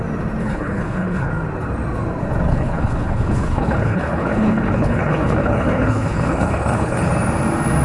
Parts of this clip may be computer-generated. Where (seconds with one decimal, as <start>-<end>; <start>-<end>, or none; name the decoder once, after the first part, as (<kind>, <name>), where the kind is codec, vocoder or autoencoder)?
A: 0.4-1.3 (codec, HILCodec); 2.5-7.1